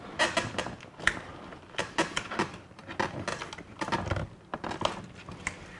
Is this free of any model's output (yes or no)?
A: yes